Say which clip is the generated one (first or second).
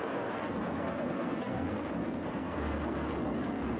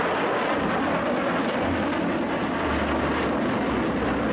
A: first